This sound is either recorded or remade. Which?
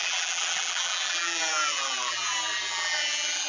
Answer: remade